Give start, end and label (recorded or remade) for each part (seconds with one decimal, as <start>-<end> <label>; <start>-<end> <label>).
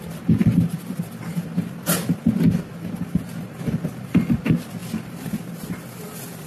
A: 0.0-0.4 recorded; 0.4-1.0 remade; 1.0-6.5 recorded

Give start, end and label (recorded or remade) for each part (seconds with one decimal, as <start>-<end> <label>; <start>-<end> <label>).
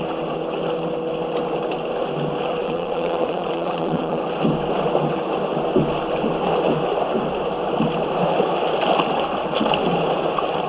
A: 0.0-2.6 recorded; 2.6-4.2 remade; 4.2-10.7 recorded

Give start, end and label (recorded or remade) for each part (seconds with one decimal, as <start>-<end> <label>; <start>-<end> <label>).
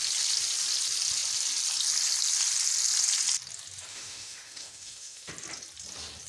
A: 0.0-3.9 recorded; 3.9-5.3 remade; 5.3-6.3 recorded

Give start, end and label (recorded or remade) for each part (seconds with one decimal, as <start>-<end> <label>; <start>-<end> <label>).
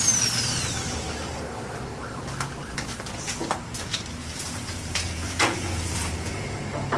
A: 0.0-4.2 recorded; 4.2-6.6 remade; 6.6-7.0 recorded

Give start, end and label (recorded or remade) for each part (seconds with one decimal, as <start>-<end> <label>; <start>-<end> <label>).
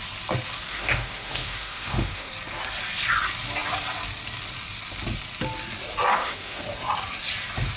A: 0.0-0.7 recorded; 0.7-2.3 remade; 2.3-6.1 recorded; 6.1-6.6 remade; 6.6-7.8 recorded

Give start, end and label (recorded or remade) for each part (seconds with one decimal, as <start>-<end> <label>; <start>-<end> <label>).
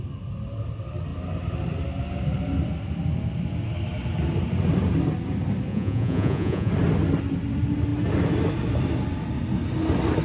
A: 0.0-5.7 recorded; 5.7-6.7 remade; 6.7-10.2 recorded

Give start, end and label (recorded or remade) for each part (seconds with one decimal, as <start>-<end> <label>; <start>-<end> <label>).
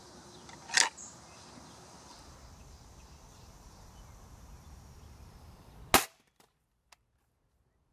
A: 0.0-3.3 recorded; 3.3-5.8 remade; 5.8-7.9 recorded